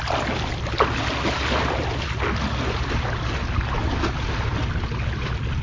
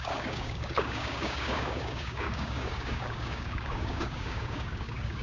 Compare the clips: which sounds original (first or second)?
first